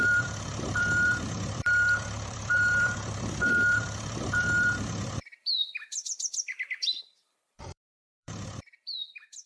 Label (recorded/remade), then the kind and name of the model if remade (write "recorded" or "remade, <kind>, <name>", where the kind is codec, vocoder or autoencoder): remade, vocoder, BigVGAN v2